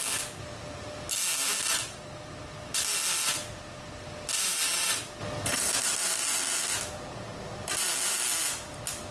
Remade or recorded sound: recorded